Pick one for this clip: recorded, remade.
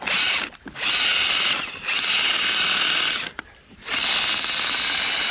recorded